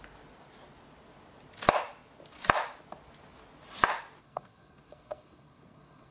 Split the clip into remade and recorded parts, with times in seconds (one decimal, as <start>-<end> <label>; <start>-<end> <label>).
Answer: 0.0-4.2 recorded; 4.2-6.1 remade

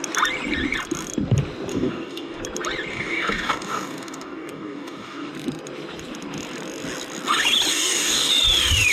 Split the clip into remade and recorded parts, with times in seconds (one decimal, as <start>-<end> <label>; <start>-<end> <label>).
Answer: 0.0-1.7 recorded; 1.7-2.4 remade; 2.4-2.9 recorded; 2.9-5.3 remade; 5.3-7.7 recorded; 7.7-8.3 remade; 8.3-8.9 recorded

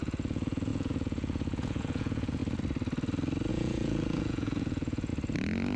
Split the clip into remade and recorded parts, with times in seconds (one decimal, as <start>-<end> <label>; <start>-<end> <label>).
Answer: 0.0-2.4 remade; 2.4-3.5 recorded; 3.5-5.1 remade; 5.1-5.8 recorded

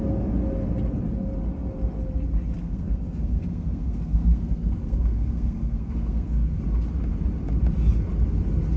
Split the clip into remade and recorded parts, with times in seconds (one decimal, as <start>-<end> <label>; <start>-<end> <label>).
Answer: 0.0-2.6 recorded; 2.6-6.6 remade; 6.6-8.8 recorded

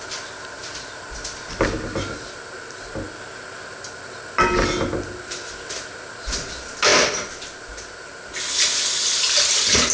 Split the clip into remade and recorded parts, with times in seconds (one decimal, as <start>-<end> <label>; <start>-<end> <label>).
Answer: 0.0-9.9 recorded

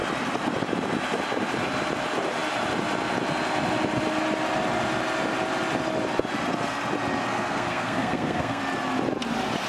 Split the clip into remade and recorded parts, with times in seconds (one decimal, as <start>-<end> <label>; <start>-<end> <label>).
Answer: 0.0-7.3 recorded; 7.3-8.6 remade; 8.6-9.7 recorded

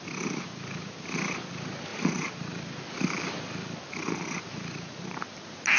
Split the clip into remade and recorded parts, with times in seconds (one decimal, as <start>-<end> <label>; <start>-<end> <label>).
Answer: 0.0-1.9 recorded; 1.9-2.5 remade; 2.5-5.8 recorded